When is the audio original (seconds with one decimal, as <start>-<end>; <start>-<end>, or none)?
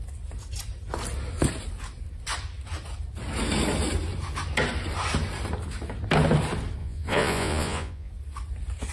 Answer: 0.0-6.8; 8.1-8.9